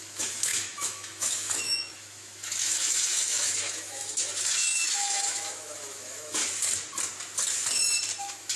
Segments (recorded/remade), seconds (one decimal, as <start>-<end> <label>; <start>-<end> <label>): 0.0-6.4 remade; 6.4-8.2 recorded; 8.2-8.6 remade